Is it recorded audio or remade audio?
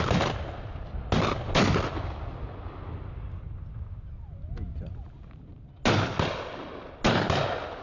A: recorded